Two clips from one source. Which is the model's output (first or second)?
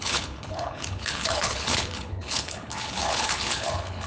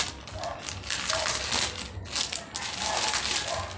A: first